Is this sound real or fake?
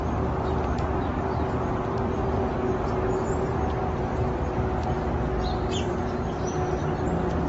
real